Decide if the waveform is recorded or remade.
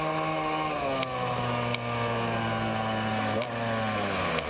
recorded